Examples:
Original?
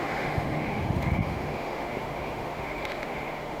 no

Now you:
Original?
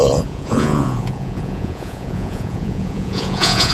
no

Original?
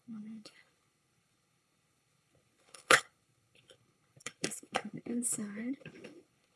no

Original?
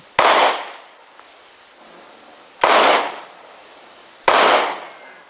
yes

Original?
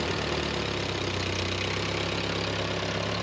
yes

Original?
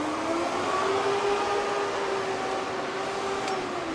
yes